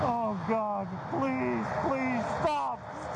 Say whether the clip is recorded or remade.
recorded